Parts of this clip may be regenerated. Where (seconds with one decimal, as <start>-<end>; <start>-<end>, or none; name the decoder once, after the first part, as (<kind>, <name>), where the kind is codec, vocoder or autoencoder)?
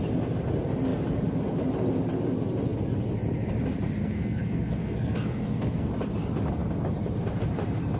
4.0-5.9 (codec, SNAC)